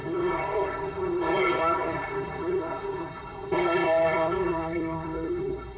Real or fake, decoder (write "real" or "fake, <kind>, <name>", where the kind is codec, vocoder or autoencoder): fake, codec, SNAC